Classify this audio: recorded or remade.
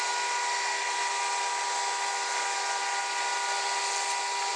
recorded